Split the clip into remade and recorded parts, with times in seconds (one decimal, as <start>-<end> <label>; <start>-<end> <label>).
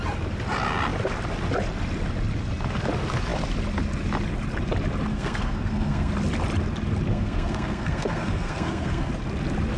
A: 0.0-5.1 recorded; 5.1-6.1 remade; 6.1-7.1 recorded; 7.1-9.1 remade; 9.1-9.8 recorded